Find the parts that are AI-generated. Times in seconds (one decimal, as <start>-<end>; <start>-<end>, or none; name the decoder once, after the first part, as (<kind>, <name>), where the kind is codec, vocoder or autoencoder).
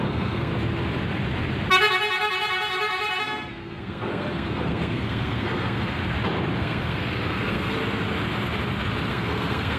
0.0-0.5 (codec, SNAC); 3.2-6.0; 6.6-7.8; 9.1-9.8